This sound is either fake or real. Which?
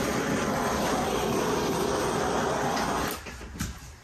real